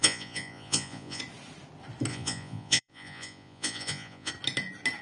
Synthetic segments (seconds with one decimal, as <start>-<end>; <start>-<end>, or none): 0.0-1.2; 2.1-4.3